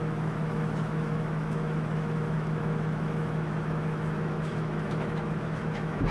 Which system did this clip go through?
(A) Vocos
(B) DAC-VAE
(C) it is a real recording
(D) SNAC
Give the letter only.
B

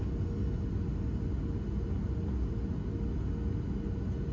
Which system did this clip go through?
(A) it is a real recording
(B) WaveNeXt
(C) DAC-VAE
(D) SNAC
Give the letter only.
A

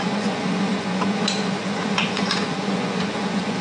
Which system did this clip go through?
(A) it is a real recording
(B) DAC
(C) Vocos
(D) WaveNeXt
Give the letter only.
C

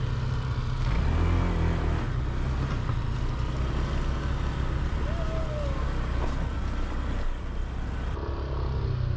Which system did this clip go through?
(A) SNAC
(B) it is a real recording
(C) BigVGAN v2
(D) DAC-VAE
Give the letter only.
B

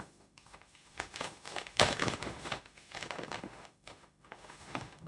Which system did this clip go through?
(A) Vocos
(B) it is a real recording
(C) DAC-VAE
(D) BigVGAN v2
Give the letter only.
C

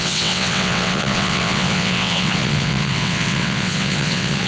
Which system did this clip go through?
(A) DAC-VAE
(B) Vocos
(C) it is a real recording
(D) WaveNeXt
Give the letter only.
D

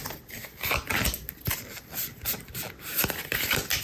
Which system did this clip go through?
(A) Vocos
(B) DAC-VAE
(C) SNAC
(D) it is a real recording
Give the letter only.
D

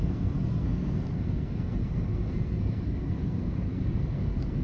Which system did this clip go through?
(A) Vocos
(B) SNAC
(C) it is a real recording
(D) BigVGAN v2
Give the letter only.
B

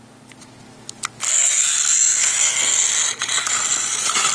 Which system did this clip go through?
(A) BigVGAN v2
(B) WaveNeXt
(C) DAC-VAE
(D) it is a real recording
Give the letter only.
D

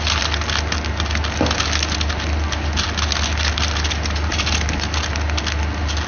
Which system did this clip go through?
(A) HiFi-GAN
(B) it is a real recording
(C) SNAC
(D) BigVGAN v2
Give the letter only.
B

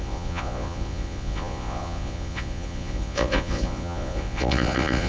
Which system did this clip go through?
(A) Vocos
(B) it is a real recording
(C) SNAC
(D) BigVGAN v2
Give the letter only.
A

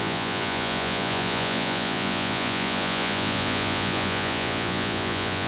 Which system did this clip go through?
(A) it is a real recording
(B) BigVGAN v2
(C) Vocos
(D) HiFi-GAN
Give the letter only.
C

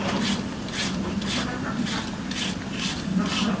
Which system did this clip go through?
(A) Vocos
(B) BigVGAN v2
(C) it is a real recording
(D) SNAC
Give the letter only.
C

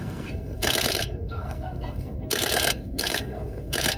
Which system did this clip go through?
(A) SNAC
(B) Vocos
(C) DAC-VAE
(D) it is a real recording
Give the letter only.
A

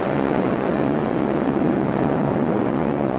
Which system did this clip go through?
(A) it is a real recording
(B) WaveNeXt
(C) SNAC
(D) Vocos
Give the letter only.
B